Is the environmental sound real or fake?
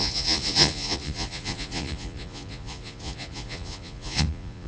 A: fake